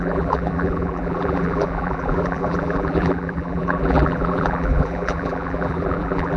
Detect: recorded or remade remade